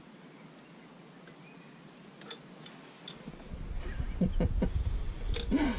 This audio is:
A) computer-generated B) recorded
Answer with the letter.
B